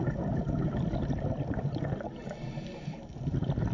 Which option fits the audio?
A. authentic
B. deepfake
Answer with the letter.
A